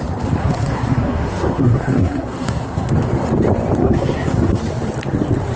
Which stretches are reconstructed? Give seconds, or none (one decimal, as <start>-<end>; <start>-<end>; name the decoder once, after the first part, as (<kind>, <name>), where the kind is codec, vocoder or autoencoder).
0.4-2.9 (codec, SNAC); 3.8-4.6